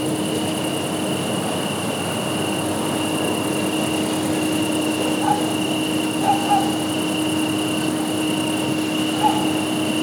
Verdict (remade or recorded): recorded